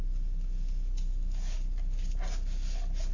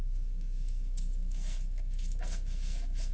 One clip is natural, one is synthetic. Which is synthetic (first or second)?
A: second